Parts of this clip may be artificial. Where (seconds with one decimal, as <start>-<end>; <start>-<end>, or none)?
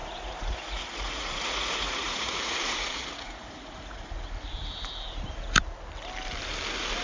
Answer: 0.0-4.1